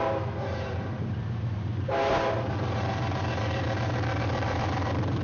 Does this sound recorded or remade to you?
remade